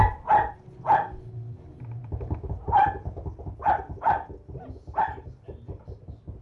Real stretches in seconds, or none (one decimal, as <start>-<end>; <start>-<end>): 0.0-6.4